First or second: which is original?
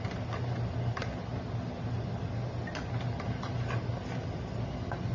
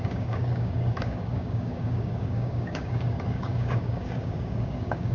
first